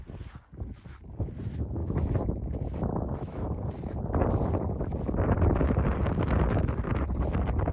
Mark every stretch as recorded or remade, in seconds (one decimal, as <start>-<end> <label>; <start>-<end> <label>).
0.0-1.8 recorded; 1.8-3.7 remade; 3.7-7.7 recorded